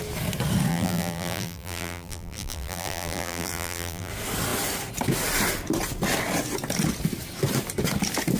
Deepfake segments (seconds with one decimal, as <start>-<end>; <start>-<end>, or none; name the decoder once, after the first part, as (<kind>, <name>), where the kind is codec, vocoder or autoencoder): 0.7-4.1 (vocoder, BigVGAN v2)